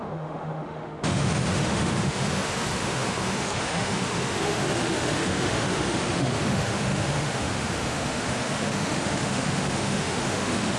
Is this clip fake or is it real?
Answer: fake